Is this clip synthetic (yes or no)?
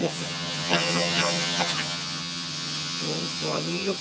yes